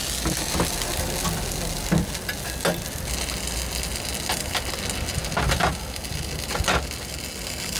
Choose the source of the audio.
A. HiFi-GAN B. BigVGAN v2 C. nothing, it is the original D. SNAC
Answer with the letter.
C